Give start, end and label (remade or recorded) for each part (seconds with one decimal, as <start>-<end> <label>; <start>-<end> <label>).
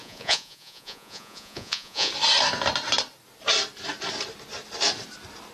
0.0-2.1 remade; 2.1-5.5 recorded